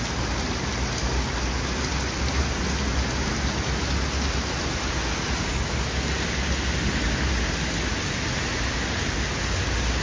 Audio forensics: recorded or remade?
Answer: recorded